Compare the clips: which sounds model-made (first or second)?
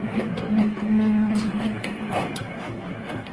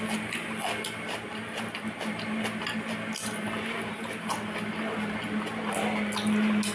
first